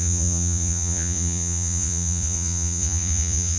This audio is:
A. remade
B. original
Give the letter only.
A